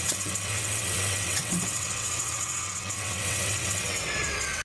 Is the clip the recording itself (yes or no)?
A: no